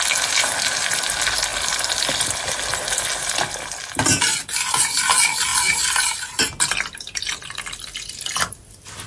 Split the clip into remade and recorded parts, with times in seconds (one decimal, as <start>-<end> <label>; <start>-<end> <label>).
0.0-9.1 recorded